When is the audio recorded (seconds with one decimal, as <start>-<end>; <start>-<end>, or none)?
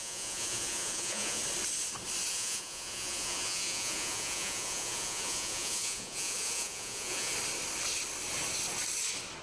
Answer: 1.4-2.3; 7.3-9.4